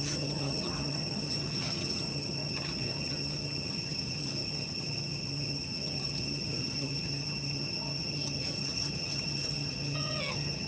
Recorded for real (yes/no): no